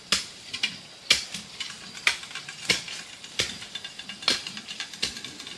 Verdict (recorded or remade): recorded